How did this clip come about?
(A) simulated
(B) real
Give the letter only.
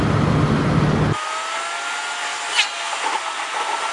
B